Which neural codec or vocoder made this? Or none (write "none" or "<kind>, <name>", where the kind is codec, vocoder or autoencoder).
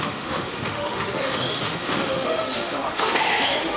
autoencoder, DAC-VAE